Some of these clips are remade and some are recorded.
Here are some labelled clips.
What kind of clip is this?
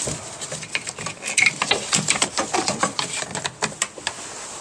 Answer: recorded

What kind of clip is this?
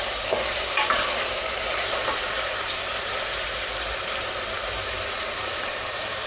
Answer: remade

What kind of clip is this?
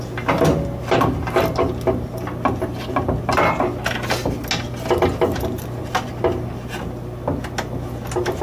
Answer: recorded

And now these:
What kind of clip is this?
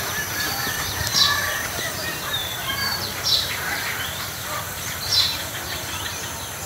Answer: remade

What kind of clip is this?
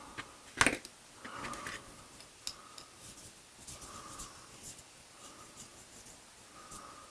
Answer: recorded